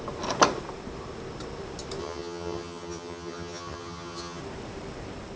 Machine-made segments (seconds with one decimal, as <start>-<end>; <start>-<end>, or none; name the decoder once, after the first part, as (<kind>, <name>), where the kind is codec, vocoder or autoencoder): 2.0-4.4 (vocoder, HiFi-GAN)